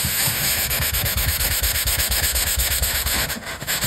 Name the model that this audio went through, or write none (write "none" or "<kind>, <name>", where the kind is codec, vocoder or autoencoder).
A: autoencoder, DAC-VAE